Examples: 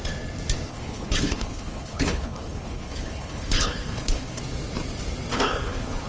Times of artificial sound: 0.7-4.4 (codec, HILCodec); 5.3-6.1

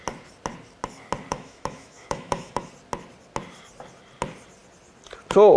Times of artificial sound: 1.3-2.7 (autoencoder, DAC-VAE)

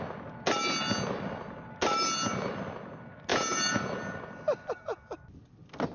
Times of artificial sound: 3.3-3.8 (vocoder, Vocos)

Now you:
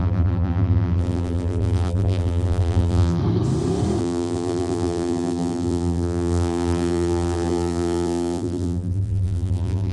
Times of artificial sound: 0.0-3.2 (vocoder, BigVGAN v2); 4.0-9.9

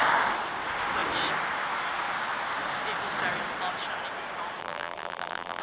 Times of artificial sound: 4.6-5.6 (vocoder, BigVGAN v2)

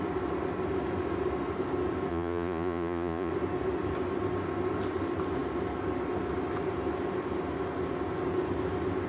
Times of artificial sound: 2.1-3.3 (vocoder, Vocos)

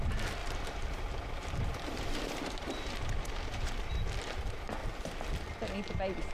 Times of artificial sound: 0.4-4.0 (vocoder, BigVGAN v2); 4.8-5.3

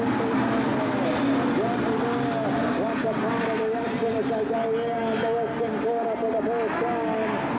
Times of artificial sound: none